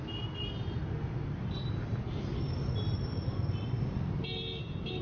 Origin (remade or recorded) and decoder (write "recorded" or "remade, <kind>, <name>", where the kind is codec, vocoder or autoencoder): recorded